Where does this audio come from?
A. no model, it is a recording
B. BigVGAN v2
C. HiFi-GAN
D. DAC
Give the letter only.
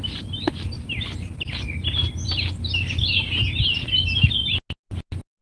A